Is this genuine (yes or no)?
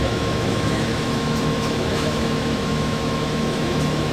no